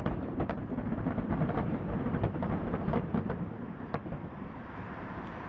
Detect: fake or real fake